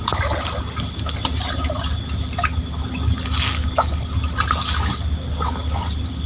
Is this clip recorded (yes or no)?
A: yes